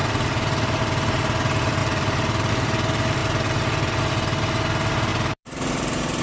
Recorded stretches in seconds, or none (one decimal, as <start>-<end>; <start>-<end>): 0.0-1.8; 2.5-5.1